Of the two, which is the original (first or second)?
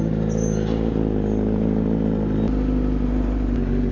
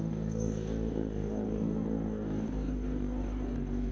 first